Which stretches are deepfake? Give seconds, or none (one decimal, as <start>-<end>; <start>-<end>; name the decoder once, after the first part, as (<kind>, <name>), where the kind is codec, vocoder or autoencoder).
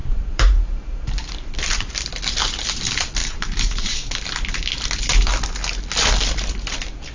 0.0-1.9 (vocoder, BigVGAN v2); 3.2-4.1